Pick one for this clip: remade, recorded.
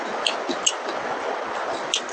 recorded